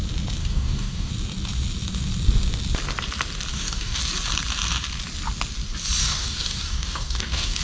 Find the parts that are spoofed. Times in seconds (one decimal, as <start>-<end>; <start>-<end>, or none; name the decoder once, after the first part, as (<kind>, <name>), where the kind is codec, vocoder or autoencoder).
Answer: 0.4-1.1 (codec, DAC); 3.5-4.0; 6.0-7.6